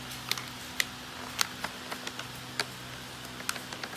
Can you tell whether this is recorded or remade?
recorded